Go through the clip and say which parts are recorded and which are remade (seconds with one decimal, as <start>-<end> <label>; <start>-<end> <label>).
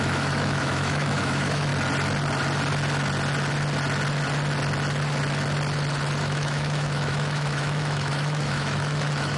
0.0-1.7 remade; 1.7-6.2 recorded; 6.2-9.4 remade